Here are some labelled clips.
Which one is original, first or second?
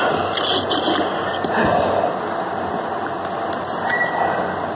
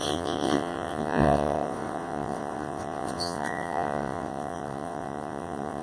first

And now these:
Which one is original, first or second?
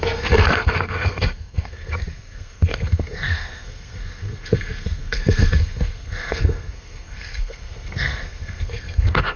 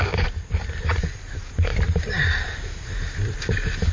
second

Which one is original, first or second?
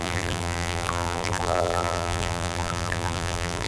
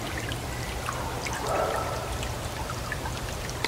second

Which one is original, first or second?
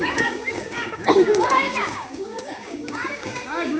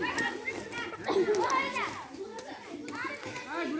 second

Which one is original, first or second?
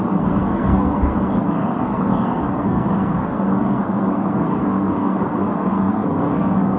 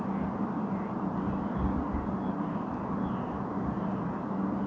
second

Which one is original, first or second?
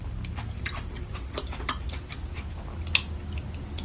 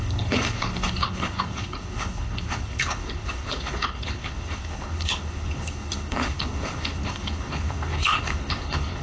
first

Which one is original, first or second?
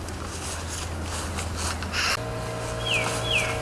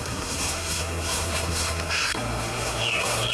first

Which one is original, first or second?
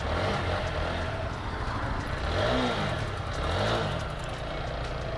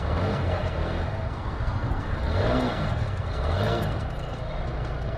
first